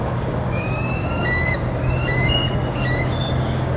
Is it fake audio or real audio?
fake